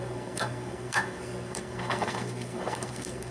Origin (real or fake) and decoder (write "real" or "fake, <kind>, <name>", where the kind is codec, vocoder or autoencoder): fake, codec, SNAC